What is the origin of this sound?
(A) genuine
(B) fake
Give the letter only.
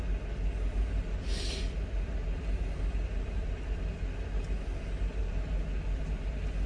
A